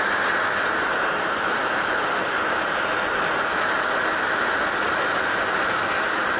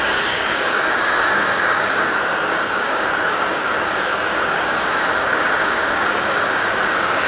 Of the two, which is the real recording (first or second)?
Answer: first